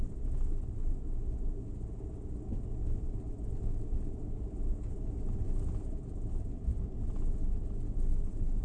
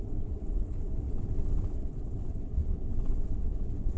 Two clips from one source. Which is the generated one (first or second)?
second